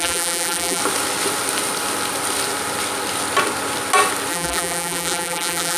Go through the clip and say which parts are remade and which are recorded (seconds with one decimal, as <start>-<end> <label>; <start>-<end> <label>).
0.0-0.8 remade; 0.8-4.3 recorded; 4.3-5.8 remade